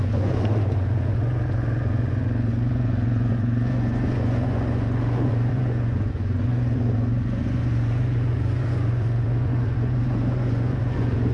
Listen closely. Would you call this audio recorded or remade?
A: remade